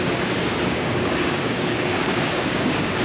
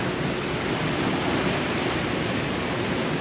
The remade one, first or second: first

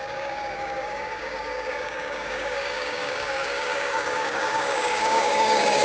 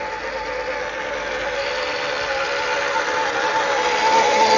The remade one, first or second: first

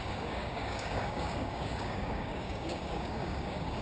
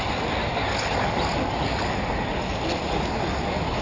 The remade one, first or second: first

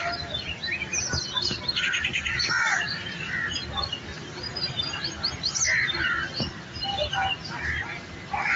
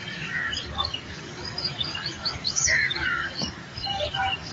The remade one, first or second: second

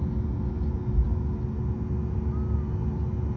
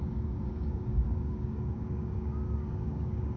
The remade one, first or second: second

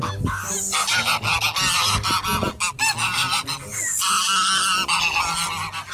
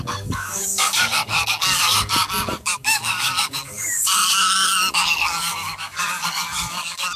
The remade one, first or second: second